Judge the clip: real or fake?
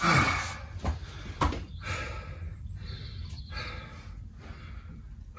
real